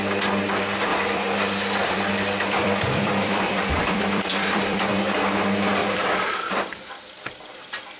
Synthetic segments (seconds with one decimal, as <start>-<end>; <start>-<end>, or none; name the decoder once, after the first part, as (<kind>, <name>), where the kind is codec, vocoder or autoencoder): 0.9-4.8 (vocoder, BigVGAN v2); 5.8-7.5